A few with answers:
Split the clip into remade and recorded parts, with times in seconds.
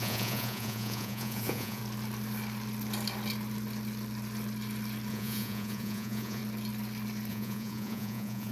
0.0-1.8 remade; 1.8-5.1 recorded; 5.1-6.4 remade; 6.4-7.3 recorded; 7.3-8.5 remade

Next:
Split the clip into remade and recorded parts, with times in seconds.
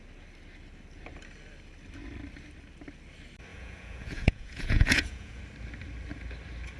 0.0-3.5 recorded; 3.5-5.4 remade; 5.4-6.8 recorded